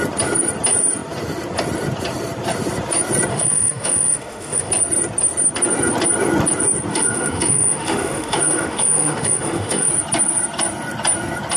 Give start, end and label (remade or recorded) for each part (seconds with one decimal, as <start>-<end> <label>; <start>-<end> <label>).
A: 0.0-3.3 recorded; 3.3-4.7 remade; 4.7-6.9 recorded; 6.9-9.9 remade; 9.9-11.6 recorded